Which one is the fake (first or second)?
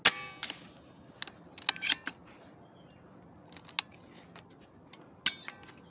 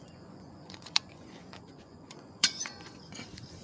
second